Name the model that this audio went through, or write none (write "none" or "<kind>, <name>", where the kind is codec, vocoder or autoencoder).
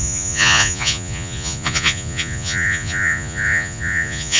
vocoder, Vocos